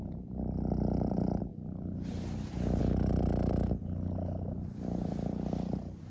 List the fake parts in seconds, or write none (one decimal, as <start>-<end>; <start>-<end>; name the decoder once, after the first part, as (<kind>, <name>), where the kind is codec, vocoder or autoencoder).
none